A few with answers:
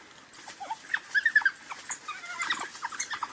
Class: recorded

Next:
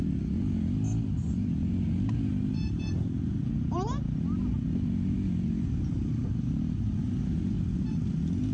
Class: recorded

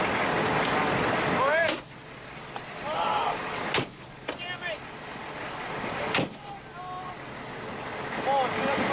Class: recorded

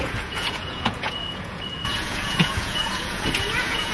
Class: remade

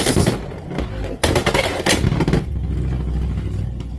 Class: recorded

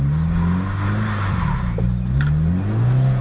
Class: recorded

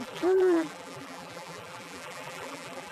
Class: remade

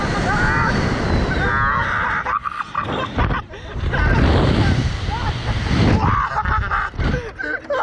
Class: recorded